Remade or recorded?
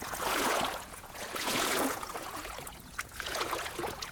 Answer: remade